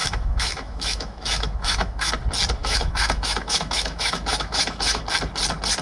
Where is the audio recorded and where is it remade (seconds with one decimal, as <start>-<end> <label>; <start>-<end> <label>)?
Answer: 0.0-2.1 remade; 2.1-2.6 recorded; 2.6-5.0 remade; 5.0-5.8 recorded